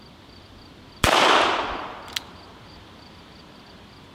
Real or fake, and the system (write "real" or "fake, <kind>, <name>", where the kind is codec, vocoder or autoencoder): real